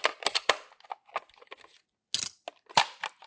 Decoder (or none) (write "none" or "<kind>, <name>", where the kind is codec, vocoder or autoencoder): none